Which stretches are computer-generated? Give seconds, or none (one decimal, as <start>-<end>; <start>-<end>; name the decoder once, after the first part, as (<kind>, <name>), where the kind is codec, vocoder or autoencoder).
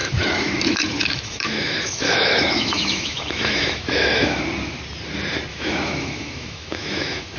0.0-4.4 (autoencoder, DAC-VAE); 5.5-7.4